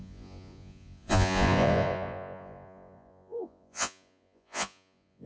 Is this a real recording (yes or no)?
no